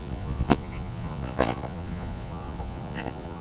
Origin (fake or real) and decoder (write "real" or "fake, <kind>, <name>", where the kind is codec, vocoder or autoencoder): fake, vocoder, Vocos